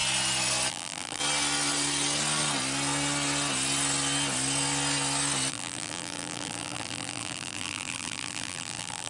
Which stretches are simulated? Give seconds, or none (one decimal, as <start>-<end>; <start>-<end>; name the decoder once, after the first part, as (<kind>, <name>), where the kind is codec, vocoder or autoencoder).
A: 0.7-1.2 (vocoder, BigVGAN v2); 5.5-9.1